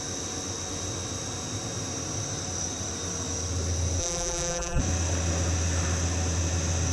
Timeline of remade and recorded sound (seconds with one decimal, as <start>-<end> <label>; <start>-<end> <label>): 0.0-4.0 recorded; 4.0-4.8 remade; 4.8-6.9 recorded